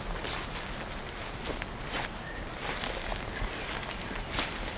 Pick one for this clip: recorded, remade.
recorded